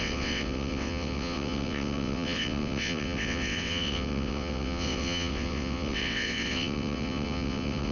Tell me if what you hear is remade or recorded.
remade